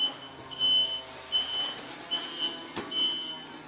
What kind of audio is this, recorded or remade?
recorded